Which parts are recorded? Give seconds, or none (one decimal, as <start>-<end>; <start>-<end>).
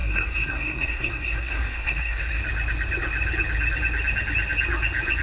2.4-5.2